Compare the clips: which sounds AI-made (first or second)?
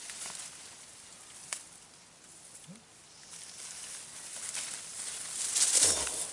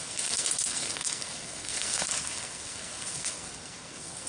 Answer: second